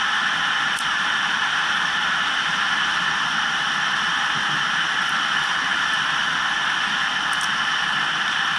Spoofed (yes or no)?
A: no